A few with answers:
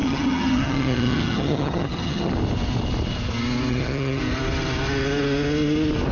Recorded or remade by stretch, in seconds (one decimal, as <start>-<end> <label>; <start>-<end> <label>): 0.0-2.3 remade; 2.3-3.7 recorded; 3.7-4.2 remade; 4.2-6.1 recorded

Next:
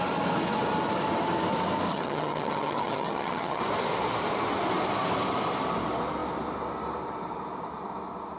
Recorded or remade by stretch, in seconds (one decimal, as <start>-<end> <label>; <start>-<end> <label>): 0.0-1.9 recorded; 1.9-3.6 remade; 3.6-8.4 recorded

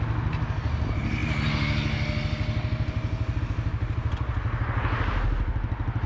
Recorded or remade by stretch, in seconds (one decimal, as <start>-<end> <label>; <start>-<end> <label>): 0.0-6.1 recorded